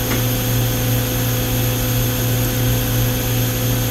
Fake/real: real